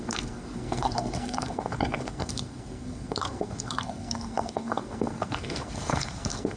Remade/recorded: remade